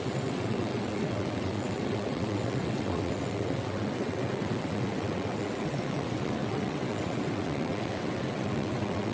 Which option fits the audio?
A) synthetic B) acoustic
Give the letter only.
A